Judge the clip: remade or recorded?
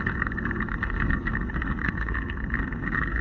remade